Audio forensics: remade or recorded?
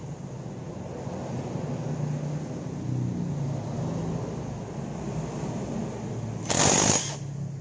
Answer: recorded